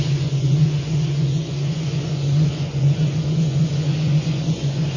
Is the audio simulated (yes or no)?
yes